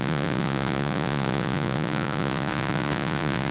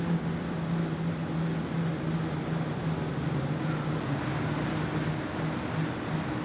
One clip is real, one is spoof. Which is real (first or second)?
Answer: second